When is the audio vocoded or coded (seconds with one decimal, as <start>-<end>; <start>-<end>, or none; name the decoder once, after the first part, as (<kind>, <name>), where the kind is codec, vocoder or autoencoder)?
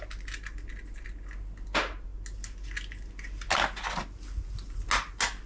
none